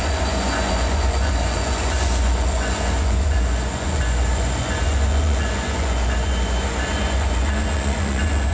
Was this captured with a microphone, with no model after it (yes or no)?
no